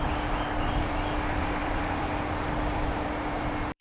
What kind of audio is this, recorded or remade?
remade